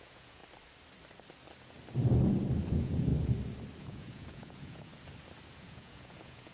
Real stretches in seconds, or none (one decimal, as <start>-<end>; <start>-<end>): 0.4-2.7; 3.1-3.8; 4.9-5.6